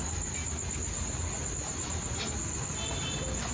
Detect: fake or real real